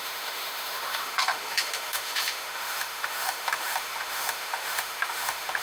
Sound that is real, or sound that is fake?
fake